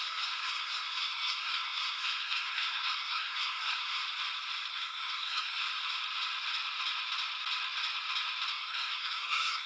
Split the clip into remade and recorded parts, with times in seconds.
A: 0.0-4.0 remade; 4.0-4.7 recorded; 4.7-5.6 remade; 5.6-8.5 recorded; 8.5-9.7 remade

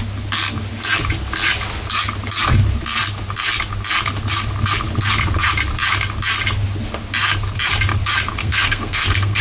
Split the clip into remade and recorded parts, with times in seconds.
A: 0.0-8.4 recorded; 8.4-9.4 remade